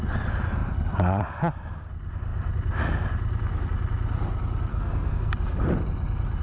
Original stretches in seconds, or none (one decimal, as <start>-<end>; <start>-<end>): 0.0-4.7; 5.3-6.4